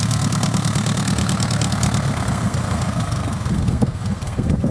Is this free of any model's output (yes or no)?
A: no